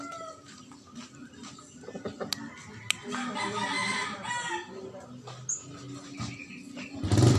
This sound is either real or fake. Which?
real